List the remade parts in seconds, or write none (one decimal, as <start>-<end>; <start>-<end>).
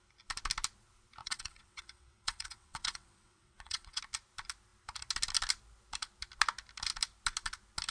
1.2-4.0